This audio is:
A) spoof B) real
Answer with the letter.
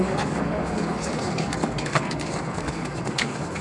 A